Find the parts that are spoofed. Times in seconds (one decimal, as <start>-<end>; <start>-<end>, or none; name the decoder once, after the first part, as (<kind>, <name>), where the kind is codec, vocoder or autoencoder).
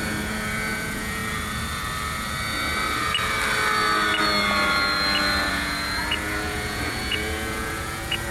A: 0.0-1.2 (vocoder, Vocos); 5.5-8.3